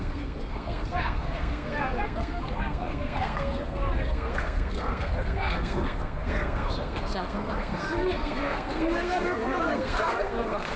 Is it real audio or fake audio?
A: fake